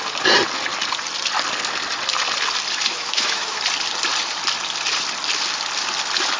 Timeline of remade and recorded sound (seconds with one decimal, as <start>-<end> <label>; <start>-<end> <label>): 0.0-2.9 recorded; 2.9-3.6 remade; 3.6-6.4 recorded